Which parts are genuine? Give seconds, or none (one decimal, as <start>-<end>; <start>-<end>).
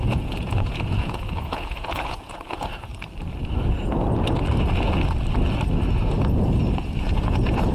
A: 2.9-6.2